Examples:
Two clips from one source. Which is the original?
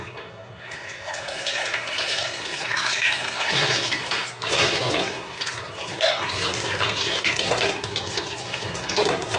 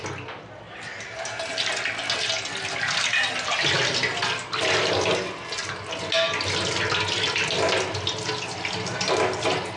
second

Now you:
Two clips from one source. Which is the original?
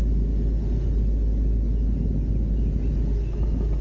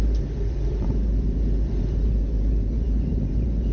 first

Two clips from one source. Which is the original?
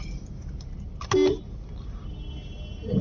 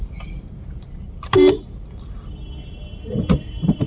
first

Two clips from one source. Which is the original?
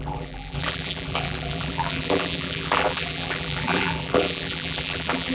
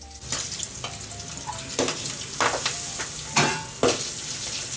second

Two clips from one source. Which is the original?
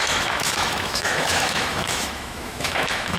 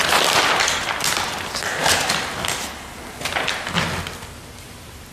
second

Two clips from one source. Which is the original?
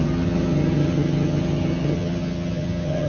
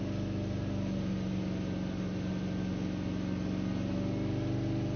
second